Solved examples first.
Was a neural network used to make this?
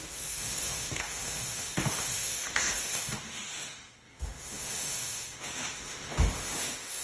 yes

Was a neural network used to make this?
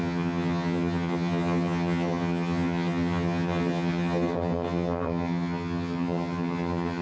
yes